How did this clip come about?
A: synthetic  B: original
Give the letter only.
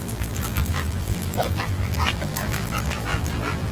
A